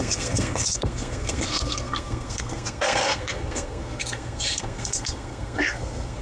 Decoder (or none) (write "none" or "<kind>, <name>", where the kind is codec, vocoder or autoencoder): codec, SNAC